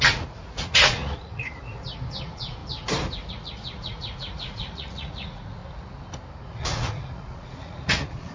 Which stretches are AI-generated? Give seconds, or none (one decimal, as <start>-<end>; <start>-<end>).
0.0-1.6; 2.2-2.6; 3.3-5.6; 6.5-8.3